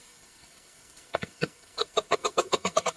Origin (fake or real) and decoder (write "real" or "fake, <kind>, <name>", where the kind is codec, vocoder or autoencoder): fake, codec, SNAC